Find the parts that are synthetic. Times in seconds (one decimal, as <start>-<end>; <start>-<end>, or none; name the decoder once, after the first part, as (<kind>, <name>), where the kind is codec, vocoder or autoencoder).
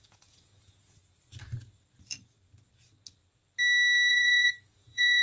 0.0-1.0 (vocoder, Vocos); 4.1-5.2